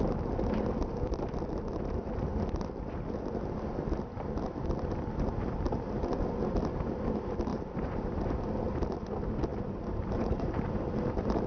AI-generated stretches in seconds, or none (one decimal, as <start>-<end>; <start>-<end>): 7.5-8.4; 9.5-10.8

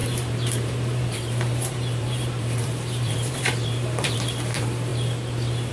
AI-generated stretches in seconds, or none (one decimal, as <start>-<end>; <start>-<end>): 0.0-4.9

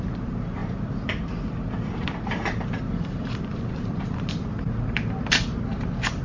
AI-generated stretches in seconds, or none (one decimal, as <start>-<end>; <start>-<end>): 0.6-4.3